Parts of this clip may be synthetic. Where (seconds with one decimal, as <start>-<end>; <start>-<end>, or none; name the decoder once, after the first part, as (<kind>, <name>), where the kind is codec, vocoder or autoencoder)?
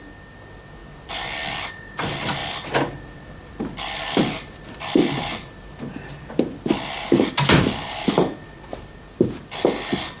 0.8-1.7 (vocoder, BigVGAN v2); 2.4-7.3